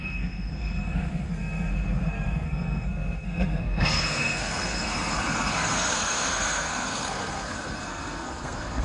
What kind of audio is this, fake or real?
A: fake